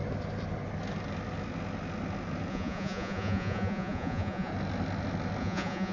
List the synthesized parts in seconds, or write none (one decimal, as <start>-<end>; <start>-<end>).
2.5-4.5; 5.4-5.9